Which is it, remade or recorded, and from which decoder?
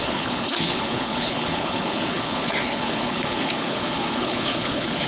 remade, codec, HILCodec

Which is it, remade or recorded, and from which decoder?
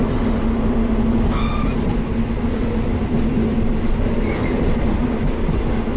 recorded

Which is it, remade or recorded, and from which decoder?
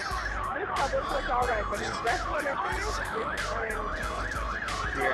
recorded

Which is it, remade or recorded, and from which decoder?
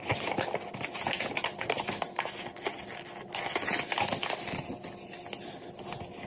recorded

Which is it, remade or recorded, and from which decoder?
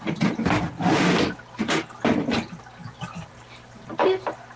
recorded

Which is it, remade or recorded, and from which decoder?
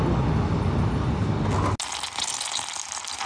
recorded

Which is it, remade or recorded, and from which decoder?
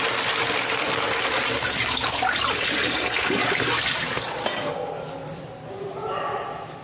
recorded